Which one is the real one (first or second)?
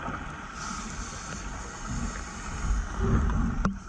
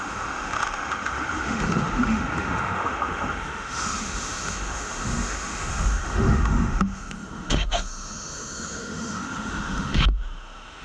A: first